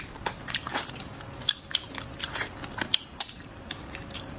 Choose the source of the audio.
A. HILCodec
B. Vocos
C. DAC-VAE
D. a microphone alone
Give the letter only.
D